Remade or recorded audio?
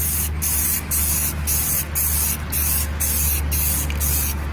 recorded